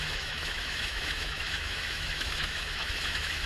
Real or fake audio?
fake